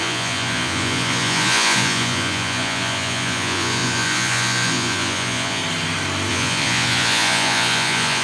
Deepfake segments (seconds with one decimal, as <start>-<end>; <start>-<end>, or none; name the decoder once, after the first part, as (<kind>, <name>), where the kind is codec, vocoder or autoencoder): 0.0-5.6 (vocoder, Vocos); 6.3-8.2